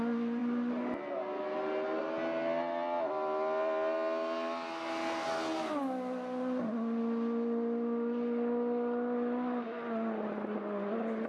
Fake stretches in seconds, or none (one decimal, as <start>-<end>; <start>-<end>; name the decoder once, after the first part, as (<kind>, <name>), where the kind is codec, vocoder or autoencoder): none